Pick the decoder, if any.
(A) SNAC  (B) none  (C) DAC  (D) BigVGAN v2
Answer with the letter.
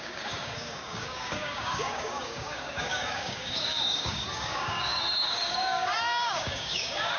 C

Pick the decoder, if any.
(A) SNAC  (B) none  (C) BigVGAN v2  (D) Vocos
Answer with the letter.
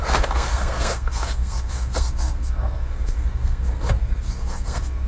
A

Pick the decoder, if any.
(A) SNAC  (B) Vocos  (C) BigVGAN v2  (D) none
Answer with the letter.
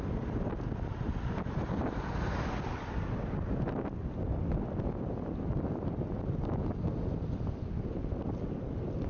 D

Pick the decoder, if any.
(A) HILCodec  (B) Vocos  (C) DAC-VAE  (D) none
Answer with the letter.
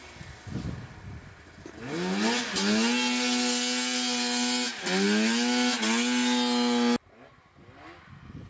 D